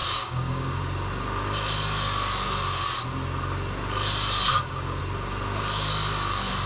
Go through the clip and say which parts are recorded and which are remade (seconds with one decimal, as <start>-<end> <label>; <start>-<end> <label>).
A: 0.0-0.8 remade; 0.8-4.5 recorded; 4.5-5.0 remade; 5.0-6.7 recorded